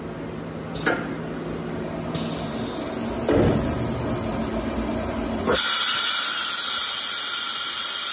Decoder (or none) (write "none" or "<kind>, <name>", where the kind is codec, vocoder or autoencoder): none